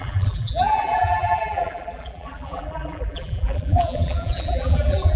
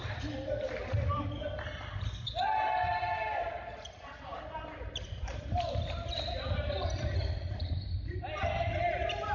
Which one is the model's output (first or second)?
first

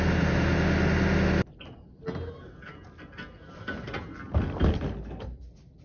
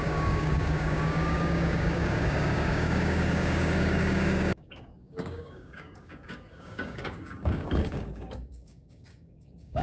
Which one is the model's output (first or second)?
second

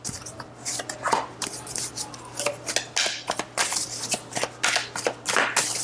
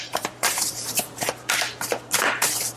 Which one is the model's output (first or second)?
second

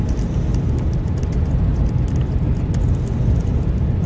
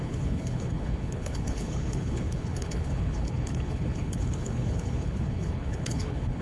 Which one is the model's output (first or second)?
second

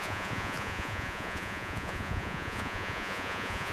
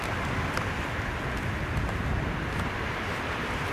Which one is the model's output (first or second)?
first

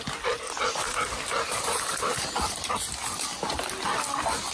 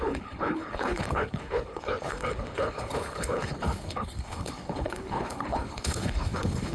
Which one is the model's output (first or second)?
second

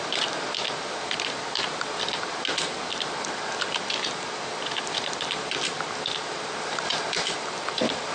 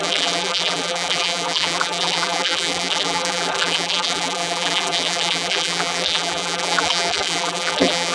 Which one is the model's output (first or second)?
second